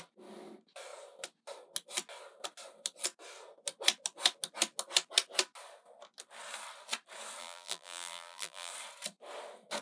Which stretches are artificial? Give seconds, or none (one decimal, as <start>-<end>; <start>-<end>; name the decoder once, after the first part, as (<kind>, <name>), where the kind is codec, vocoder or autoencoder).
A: 7.4-8.7 (vocoder, BigVGAN v2)

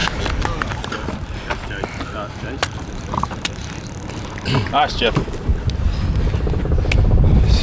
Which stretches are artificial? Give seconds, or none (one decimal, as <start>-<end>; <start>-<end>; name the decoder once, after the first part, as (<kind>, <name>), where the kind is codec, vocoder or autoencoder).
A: none

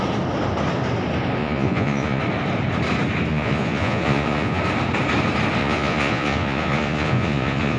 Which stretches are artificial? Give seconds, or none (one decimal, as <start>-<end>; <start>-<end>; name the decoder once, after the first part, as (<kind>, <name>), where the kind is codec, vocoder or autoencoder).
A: 1.4-2.2 (vocoder, Vocos); 3.3-4.6; 5.6-7.8

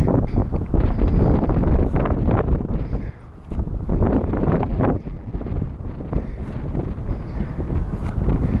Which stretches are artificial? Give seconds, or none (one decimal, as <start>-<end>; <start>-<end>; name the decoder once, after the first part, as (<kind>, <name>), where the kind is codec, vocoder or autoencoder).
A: 4.5-5.4 (vocoder, BigVGAN v2)

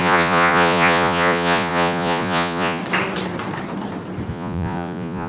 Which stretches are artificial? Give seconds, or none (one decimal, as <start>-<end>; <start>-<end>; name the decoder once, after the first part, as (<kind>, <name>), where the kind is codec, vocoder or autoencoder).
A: 0.0-2.8 (vocoder, Vocos); 4.3-5.3